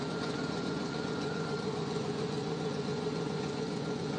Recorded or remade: remade